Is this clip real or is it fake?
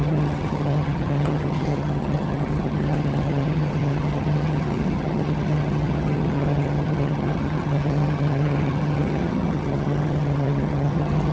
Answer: fake